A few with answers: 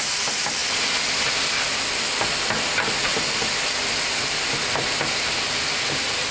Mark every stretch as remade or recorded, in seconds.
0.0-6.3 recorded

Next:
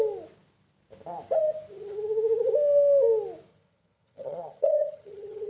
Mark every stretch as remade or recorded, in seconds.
0.0-3.5 recorded; 3.5-5.5 remade

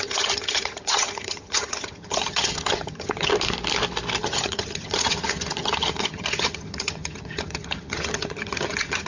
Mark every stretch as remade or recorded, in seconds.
0.0-3.3 remade; 3.3-4.2 recorded; 4.2-9.1 remade

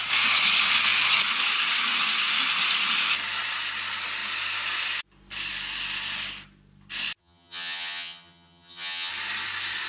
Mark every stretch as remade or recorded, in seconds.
0.0-7.2 recorded; 7.2-9.1 remade; 9.1-9.9 recorded

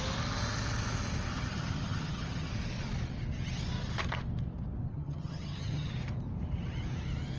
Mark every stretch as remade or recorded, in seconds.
0.0-1.3 recorded; 1.3-2.5 remade; 2.5-4.9 recorded; 4.9-5.9 remade; 5.9-7.4 recorded